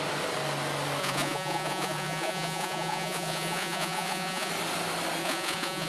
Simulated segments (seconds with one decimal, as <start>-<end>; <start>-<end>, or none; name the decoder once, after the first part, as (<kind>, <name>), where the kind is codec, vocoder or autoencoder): 1.0-4.5 (vocoder, Vocos); 5.2-5.9